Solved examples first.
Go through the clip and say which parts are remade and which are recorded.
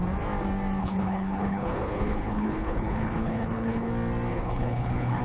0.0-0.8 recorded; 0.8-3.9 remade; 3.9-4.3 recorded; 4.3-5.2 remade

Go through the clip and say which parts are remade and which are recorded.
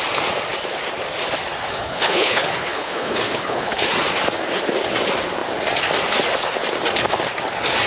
0.0-1.9 recorded; 1.9-3.9 remade; 3.9-7.9 recorded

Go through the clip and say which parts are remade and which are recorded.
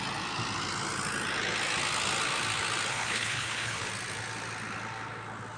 0.0-2.9 recorded; 2.9-3.9 remade; 3.9-5.6 recorded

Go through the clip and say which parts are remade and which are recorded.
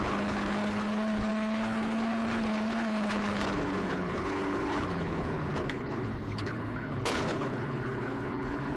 0.0-8.8 remade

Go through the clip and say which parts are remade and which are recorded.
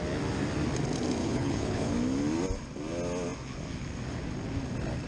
0.0-1.2 recorded; 1.2-1.9 remade; 1.9-5.1 recorded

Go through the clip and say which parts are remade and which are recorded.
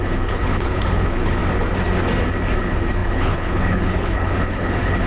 0.0-1.4 remade; 1.4-2.6 recorded; 2.6-5.1 remade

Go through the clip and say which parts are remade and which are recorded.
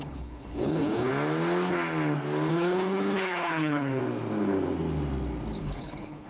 0.0-1.1 remade; 1.1-2.5 recorded; 2.5-4.0 remade; 4.0-5.6 recorded; 5.6-6.3 remade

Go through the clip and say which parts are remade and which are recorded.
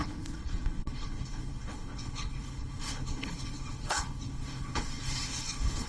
0.0-5.9 remade